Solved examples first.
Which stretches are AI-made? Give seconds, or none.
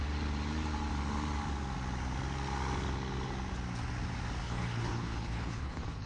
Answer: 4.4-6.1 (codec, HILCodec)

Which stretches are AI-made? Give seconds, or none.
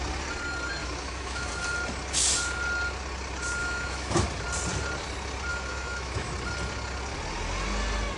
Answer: 0.8-1.5 (autoencoder, DAC-VAE); 3.6-4.2; 5.5-6.3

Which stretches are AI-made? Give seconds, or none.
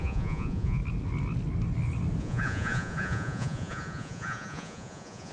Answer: 0.0-0.8 (vocoder, Vocos); 2.2-5.3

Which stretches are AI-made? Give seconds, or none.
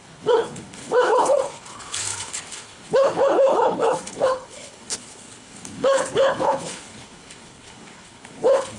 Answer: 0.0-8.8 (codec, HILCodec)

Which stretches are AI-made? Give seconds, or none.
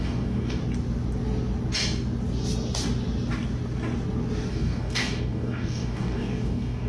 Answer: 0.0-0.6 (codec, DAC); 4.5-6.9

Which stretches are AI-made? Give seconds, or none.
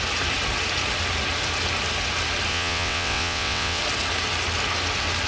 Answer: 2.5-3.8 (vocoder, WaveNeXt)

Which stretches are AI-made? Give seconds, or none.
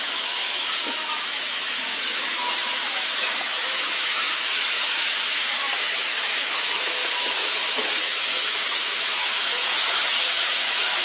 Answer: 0.0-11.0 (autoencoder, DAC-VAE)